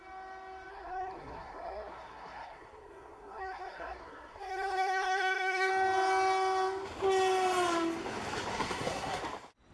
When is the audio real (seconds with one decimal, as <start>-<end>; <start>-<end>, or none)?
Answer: 0.0-0.7; 5.7-8.5; 9.2-9.7